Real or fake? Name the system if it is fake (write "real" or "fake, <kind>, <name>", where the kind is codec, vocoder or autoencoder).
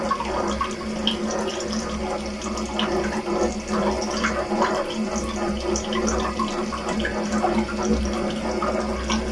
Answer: real